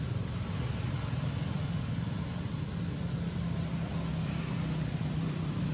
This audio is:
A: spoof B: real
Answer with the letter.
B